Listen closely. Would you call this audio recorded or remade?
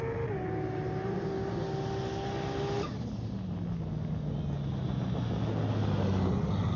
recorded